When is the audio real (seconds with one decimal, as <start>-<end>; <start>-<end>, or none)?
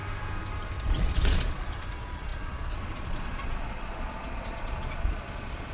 0.0-0.8